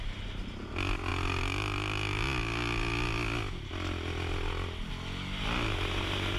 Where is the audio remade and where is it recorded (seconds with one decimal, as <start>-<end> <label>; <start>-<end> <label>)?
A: 0.0-6.4 recorded